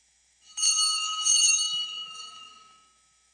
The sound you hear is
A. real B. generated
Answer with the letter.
B